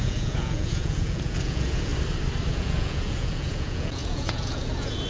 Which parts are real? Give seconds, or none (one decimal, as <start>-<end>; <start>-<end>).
1.9-2.5